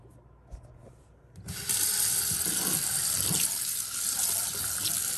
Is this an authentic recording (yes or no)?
yes